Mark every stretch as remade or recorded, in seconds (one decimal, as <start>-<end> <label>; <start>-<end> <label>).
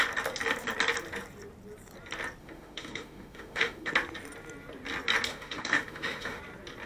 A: 0.0-2.4 recorded; 2.4-3.9 remade; 3.9-5.3 recorded; 5.3-6.4 remade; 6.4-6.9 recorded